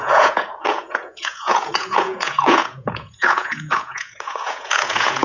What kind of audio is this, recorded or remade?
remade